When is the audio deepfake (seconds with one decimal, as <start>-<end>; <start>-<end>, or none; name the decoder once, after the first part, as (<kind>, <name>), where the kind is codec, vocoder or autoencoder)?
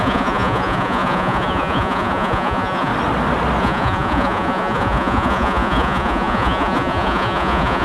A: 0.0-2.9 (vocoder, Vocos); 3.6-7.8